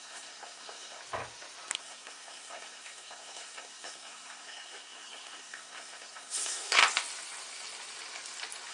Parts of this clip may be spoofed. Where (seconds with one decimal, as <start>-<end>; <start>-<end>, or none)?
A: 0.0-1.0; 1.8-6.8